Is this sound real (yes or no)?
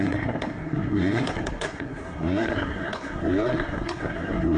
no